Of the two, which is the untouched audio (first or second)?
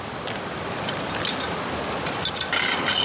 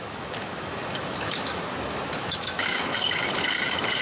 first